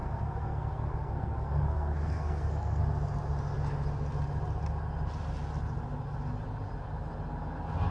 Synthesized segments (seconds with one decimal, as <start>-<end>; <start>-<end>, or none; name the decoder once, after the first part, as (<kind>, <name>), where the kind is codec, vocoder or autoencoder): 0.0-2.8 (codec, SNAC)